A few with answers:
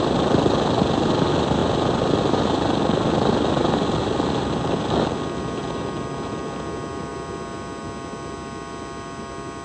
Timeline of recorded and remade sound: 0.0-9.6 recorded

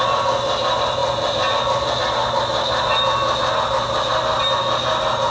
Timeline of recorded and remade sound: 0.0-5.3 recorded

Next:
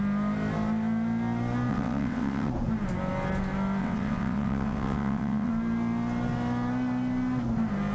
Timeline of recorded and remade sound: 0.0-1.7 recorded; 1.7-2.5 remade; 2.5-3.8 recorded; 3.8-5.5 remade; 5.5-7.9 recorded

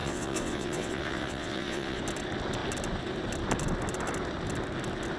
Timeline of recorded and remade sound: 0.0-2.0 remade; 2.0-5.2 recorded

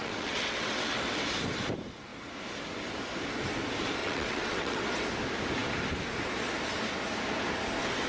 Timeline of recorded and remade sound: 0.0-1.0 remade; 1.0-4.0 recorded; 4.0-4.8 remade; 4.8-8.1 recorded

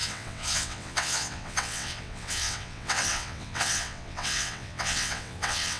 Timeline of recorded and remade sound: 0.0-5.8 remade

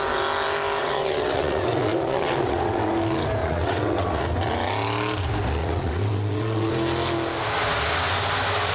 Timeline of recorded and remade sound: 0.0-0.8 recorded; 0.8-2.9 remade; 2.9-3.4 recorded; 3.4-4.2 remade; 4.2-5.6 recorded; 5.6-6.7 remade; 6.7-8.7 recorded

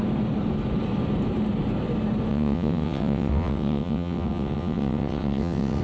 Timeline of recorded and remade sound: 0.0-2.3 recorded; 2.3-5.8 remade